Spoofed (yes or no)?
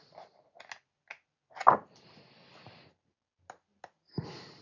no